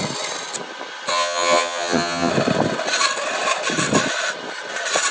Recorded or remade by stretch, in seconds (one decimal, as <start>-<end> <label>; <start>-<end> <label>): 0.0-1.1 recorded; 1.1-2.3 remade; 2.3-5.1 recorded